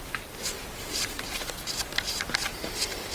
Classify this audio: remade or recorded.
recorded